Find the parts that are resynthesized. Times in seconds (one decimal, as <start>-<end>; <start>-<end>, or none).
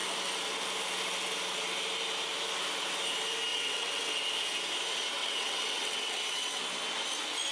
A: 3.5-4.1; 5.2-6.6